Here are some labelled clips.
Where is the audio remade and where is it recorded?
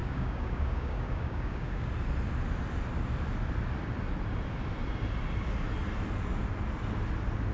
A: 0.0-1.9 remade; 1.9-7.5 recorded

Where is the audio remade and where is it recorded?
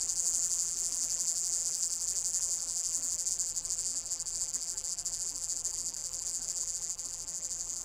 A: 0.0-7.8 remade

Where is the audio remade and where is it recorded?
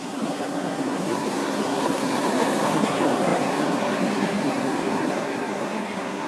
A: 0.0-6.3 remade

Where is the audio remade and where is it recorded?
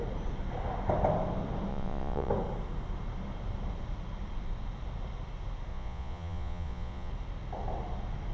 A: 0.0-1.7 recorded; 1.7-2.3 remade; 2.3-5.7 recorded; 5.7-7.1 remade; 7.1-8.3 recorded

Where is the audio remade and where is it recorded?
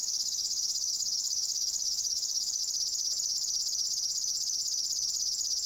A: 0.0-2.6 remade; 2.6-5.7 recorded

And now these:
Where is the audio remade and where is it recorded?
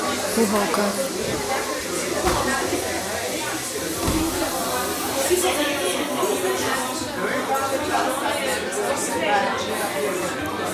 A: 0.0-10.7 recorded